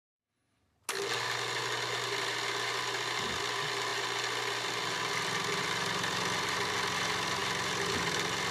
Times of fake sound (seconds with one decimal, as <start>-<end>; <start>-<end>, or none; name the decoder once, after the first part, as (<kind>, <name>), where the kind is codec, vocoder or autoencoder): none